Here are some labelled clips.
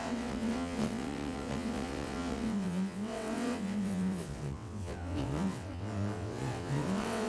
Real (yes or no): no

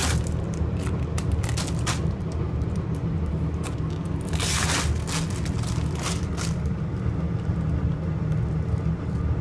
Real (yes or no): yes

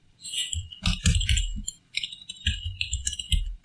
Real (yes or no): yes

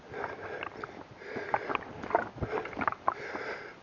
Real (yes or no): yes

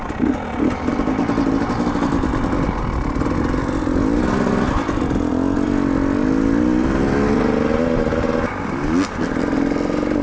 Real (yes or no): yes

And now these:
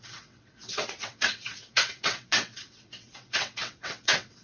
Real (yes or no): no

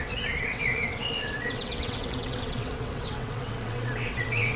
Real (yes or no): no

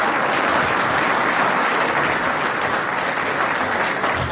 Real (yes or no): yes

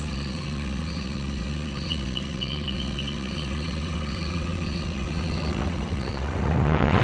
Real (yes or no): no